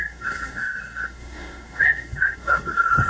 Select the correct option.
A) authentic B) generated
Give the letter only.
B